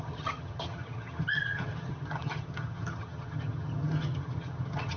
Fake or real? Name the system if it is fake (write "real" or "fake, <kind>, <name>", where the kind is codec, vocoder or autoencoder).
fake, vocoder, HiFi-GAN